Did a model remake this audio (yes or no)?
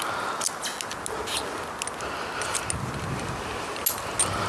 no